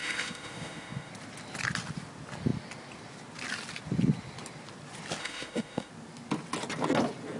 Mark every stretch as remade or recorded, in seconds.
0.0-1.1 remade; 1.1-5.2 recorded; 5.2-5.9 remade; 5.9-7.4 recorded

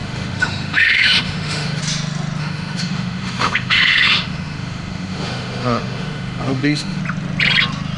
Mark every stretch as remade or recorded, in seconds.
0.0-1.8 remade; 1.8-2.4 recorded; 2.4-7.0 remade; 7.0-8.0 recorded

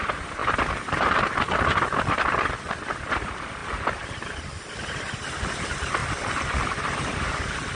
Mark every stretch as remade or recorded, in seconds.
0.0-7.7 recorded

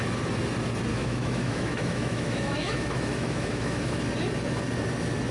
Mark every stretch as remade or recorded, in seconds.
0.0-0.9 recorded; 0.9-4.0 remade; 4.0-5.3 recorded

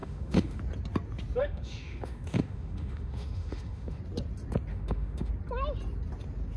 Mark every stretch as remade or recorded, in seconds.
0.0-0.6 remade; 0.6-1.4 recorded; 1.4-4.0 remade; 4.0-4.7 recorded; 4.7-5.3 remade; 5.3-6.6 recorded

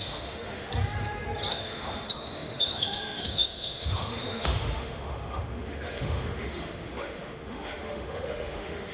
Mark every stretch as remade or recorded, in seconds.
0.0-0.7 remade; 0.7-1.5 recorded; 1.5-8.9 remade

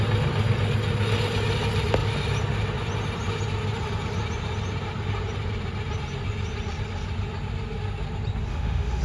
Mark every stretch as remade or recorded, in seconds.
0.0-8.5 recorded; 8.5-9.0 remade